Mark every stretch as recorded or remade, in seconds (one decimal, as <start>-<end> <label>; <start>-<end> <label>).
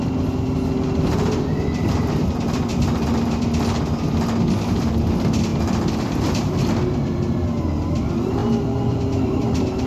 0.0-2.7 recorded; 2.7-3.4 remade; 3.4-5.5 recorded; 5.5-7.3 remade; 7.3-9.9 recorded